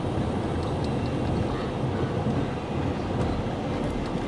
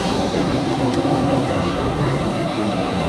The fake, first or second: second